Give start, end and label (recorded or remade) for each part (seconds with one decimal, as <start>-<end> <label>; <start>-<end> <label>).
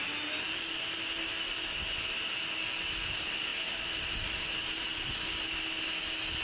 0.0-3.5 recorded; 3.5-4.3 remade; 4.3-6.4 recorded